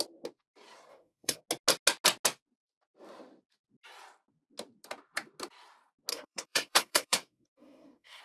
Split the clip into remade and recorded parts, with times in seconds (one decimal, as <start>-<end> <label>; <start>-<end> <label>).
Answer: 0.0-0.9 recorded; 0.9-1.4 remade; 1.4-6.1 recorded; 6.1-8.2 remade